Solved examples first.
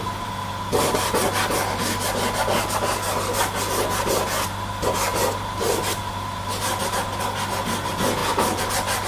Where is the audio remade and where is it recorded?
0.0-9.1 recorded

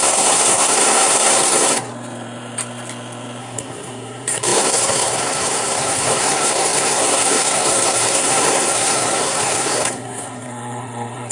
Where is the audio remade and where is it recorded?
0.0-1.9 remade; 1.9-3.4 recorded; 3.4-11.3 remade

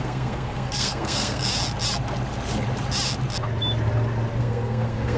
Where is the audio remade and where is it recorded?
0.0-1.5 remade; 1.5-4.4 recorded; 4.4-5.2 remade